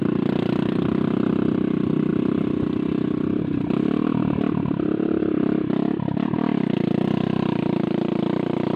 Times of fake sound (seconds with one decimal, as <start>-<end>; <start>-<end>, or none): none